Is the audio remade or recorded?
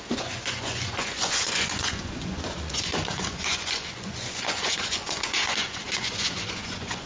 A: remade